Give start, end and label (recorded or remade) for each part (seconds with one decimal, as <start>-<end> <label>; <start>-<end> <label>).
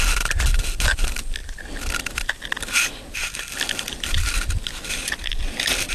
0.0-5.9 recorded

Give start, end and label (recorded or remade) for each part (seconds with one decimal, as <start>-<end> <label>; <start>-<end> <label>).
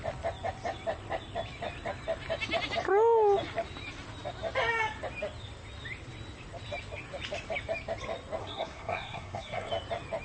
0.0-8.4 recorded; 8.4-9.7 remade; 9.7-10.2 recorded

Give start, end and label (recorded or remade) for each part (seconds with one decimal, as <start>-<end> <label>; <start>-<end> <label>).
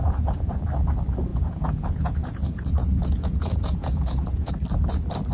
0.0-0.6 remade; 0.6-1.3 recorded; 1.3-4.5 remade; 4.5-5.3 recorded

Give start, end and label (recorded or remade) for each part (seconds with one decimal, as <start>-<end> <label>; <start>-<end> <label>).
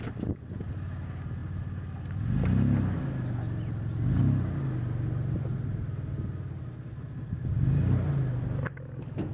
0.0-9.3 recorded